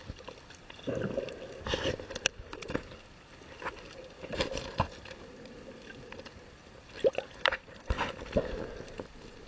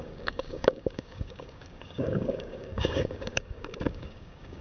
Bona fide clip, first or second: first